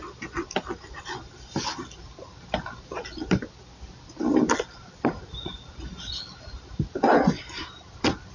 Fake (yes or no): no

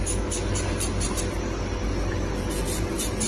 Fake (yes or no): no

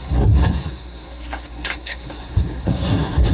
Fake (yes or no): yes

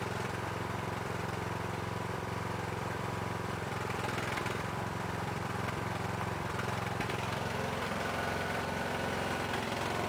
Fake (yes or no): yes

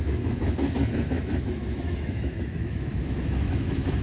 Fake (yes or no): yes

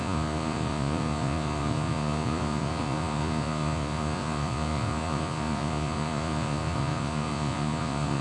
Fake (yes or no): yes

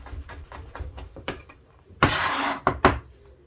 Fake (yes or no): yes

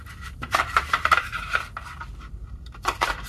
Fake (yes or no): yes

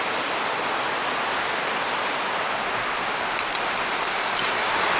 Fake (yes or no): no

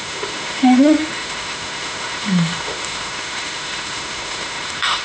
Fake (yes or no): yes